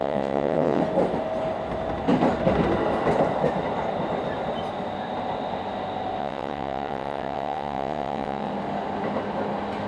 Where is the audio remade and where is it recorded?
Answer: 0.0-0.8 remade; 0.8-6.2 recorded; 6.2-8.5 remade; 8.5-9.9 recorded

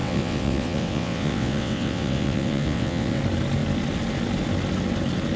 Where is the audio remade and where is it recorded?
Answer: 0.0-3.2 remade; 3.2-5.4 recorded

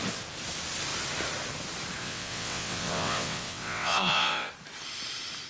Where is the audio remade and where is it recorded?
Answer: 0.0-2.0 recorded; 2.0-4.5 remade; 4.5-5.5 recorded

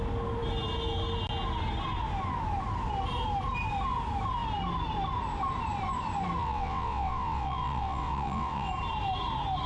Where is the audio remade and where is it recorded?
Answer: 0.0-6.4 recorded; 6.4-8.7 remade; 8.7-9.7 recorded